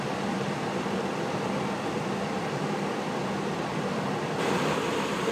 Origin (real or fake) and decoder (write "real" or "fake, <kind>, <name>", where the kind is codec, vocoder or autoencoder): fake, vocoder, BigVGAN v2